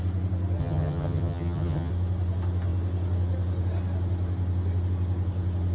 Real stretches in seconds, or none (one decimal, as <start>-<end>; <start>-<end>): 0.0-0.6; 1.9-5.7